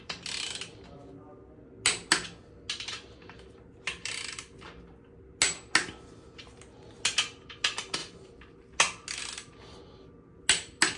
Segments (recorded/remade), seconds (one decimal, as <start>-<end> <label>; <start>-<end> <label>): 0.0-11.0 recorded

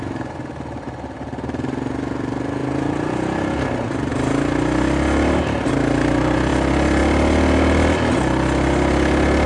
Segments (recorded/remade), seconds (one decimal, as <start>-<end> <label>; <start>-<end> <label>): 0.0-9.5 recorded

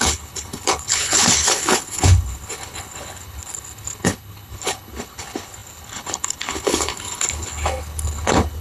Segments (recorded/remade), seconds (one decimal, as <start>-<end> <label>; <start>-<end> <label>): 0.0-8.6 remade

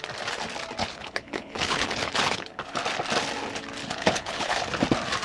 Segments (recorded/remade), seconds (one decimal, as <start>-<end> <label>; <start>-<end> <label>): 0.0-0.8 recorded; 0.8-2.6 remade; 2.6-3.8 recorded; 3.8-4.6 remade; 4.6-5.2 recorded